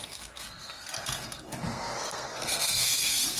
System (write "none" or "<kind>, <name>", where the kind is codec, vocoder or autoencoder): codec, SNAC